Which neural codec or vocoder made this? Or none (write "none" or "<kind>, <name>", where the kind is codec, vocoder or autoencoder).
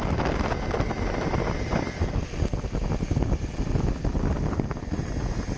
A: none